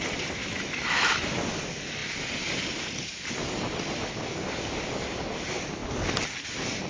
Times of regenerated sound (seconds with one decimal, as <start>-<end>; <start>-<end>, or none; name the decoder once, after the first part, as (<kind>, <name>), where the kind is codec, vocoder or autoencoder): 0.4-1.4 (autoencoder, DAC-VAE)